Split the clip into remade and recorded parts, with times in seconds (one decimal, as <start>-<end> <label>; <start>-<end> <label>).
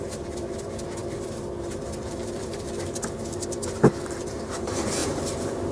0.0-5.7 remade